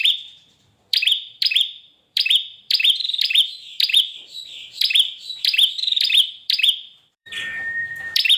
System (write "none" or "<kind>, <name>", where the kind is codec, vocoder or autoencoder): vocoder, BigVGAN v2